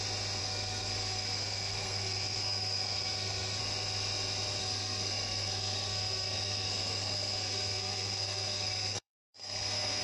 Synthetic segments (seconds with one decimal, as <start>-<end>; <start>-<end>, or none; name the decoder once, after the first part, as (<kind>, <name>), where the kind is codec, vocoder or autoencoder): 0.4-3.6 (codec, SNAC); 4.6-10.0